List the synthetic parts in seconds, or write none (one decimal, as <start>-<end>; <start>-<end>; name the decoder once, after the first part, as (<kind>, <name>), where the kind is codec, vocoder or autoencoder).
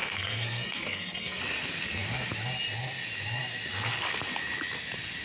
0.0-1.4 (codec, SNAC)